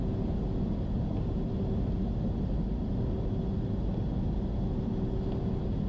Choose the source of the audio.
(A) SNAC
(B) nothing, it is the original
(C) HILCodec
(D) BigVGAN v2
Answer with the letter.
B